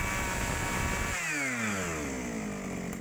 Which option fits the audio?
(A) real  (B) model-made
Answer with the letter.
A